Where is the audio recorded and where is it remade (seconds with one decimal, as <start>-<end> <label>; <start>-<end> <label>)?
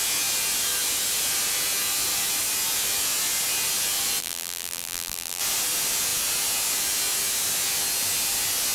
0.0-4.2 recorded; 4.2-5.4 remade; 5.4-8.7 recorded